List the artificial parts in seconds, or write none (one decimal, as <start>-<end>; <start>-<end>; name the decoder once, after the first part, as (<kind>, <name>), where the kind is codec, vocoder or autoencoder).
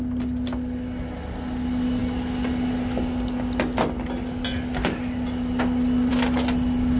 none